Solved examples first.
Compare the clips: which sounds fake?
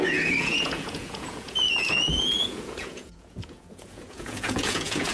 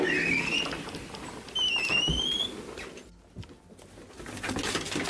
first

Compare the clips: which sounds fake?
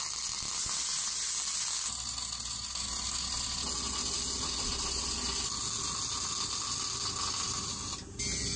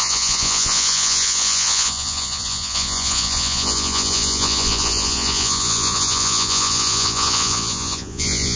second